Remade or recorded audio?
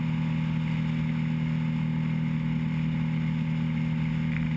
recorded